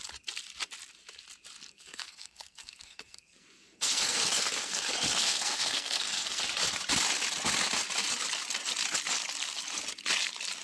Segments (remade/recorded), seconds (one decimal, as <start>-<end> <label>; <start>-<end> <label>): 0.0-1.7 recorded; 1.7-6.4 remade; 6.4-10.6 recorded